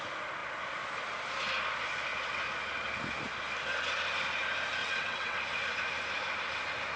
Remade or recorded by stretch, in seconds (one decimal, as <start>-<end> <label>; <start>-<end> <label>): 0.0-4.8 recorded; 4.8-5.4 remade; 5.4-7.0 recorded